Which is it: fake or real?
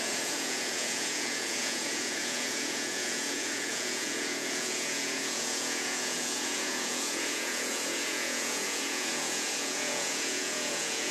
fake